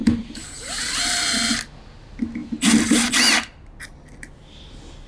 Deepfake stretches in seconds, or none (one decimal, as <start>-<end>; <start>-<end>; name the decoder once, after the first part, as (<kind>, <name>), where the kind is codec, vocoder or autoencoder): 0.0-0.9 (vocoder, BigVGAN v2); 2.4-3.1